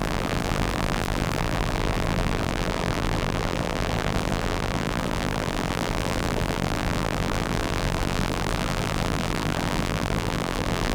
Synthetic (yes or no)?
yes